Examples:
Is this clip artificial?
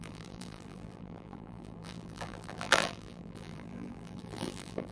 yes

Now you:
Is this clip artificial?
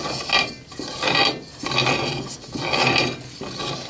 no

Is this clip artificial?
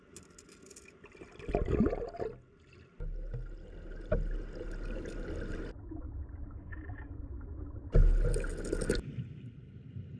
no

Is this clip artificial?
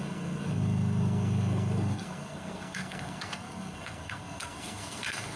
yes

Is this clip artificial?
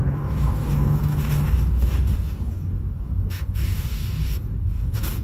yes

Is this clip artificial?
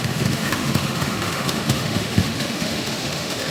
yes